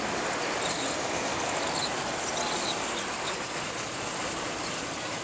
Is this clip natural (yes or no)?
yes